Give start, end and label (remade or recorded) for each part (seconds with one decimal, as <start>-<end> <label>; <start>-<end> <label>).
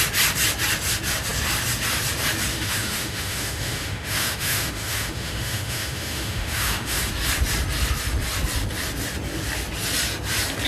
0.0-2.5 recorded; 2.5-7.1 remade; 7.1-10.7 recorded